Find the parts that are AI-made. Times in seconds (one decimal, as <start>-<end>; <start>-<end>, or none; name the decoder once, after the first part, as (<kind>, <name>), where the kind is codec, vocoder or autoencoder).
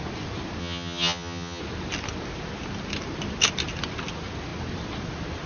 0.6-1.6 (vocoder, HiFi-GAN)